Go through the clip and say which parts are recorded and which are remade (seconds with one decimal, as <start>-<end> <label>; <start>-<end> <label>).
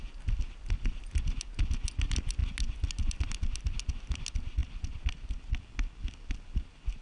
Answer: 0.0-7.0 recorded